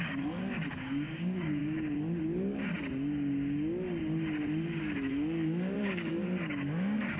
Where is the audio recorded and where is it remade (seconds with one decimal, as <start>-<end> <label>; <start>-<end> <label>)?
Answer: 0.0-2.7 remade; 2.7-4.8 recorded; 4.8-7.2 remade